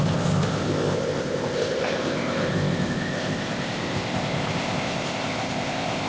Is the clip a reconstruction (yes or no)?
yes